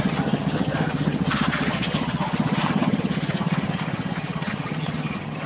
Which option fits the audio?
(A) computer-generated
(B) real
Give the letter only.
A